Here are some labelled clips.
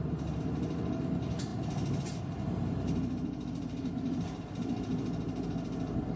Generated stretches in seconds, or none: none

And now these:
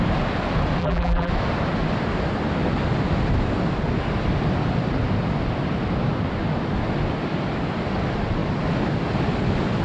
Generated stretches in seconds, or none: 0.8-1.3 (vocoder, BigVGAN v2)

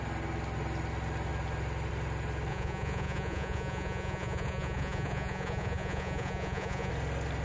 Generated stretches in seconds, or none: 2.5-6.9 (vocoder, Vocos)